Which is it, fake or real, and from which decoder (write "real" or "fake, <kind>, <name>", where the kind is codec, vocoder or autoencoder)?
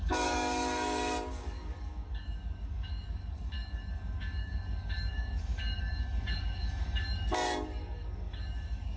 fake, codec, DAC